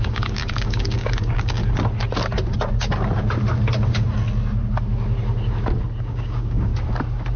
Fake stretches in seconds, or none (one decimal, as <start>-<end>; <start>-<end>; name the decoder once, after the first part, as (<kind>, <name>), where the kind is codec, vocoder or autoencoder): 0.0-1.6 (codec, DAC); 6.0-6.7